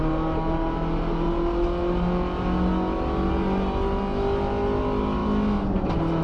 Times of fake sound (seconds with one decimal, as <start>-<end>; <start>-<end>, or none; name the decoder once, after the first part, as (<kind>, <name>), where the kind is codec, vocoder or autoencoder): none